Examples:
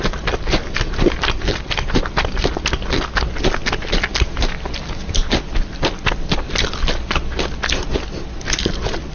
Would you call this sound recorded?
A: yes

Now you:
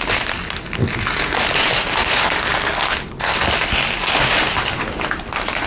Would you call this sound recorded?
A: yes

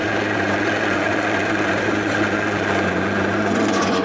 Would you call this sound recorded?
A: no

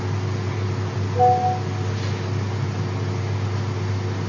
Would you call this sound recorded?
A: yes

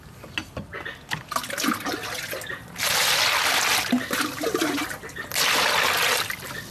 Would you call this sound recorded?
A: yes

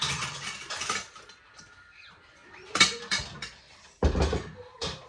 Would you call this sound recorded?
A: no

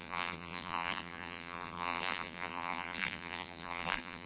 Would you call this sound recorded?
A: no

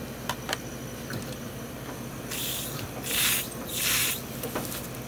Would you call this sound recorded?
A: yes